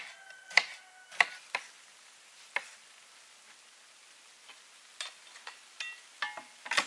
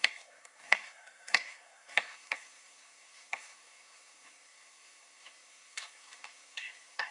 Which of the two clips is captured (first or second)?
first